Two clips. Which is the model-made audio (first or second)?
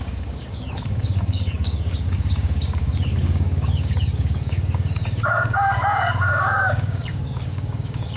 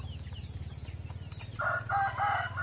first